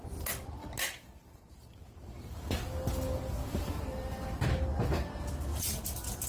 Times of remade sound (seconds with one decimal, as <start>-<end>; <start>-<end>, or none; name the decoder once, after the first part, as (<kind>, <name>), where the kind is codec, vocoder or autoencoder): 5.5-6.3 (vocoder, BigVGAN v2)